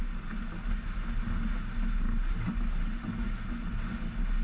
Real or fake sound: real